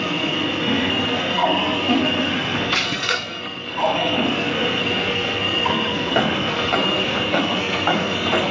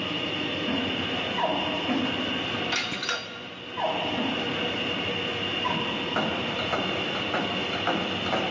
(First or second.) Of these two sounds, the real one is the second